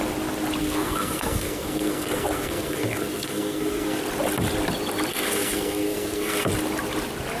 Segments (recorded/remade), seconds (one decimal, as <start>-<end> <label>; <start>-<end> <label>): 0.0-0.6 recorded; 0.6-4.0 remade; 4.0-5.1 recorded; 5.1-6.5 remade; 6.5-7.4 recorded